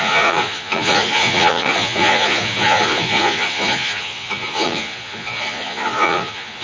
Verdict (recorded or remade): remade